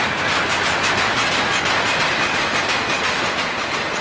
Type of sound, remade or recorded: recorded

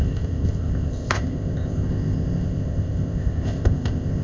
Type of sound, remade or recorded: remade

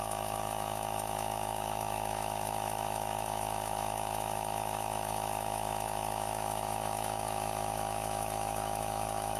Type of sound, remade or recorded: remade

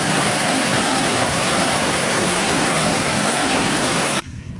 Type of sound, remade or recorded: remade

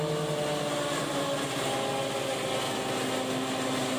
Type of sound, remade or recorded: recorded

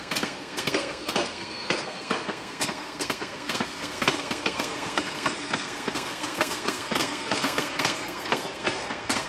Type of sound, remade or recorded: remade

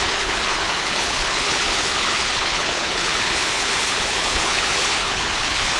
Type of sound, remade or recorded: remade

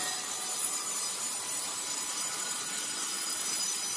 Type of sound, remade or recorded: recorded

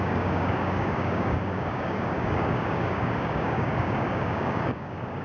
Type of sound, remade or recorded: remade